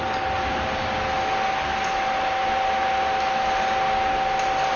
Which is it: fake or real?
real